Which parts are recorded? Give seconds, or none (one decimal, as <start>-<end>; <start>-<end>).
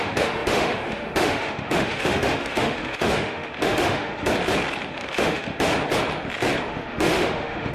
4.3-4.9; 5.7-6.7